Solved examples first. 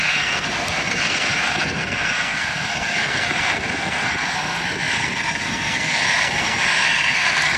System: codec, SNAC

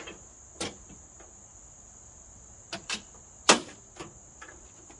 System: none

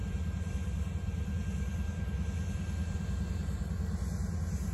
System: none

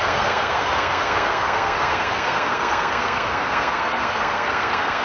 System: codec, SNAC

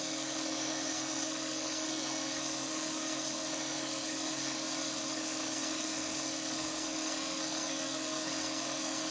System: codec, SNAC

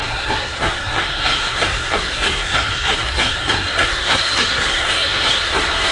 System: codec, SNAC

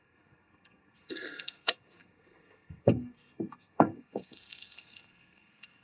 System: codec, SNAC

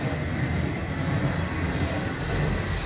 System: none